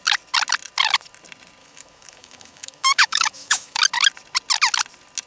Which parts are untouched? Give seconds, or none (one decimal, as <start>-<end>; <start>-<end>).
0.0-1.6; 3.8-5.3